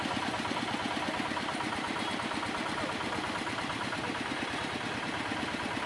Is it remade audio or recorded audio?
remade